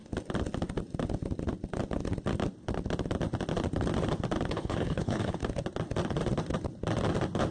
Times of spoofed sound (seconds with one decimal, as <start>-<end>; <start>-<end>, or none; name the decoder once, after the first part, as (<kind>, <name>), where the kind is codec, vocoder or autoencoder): 4.5-5.4 (codec, HILCodec)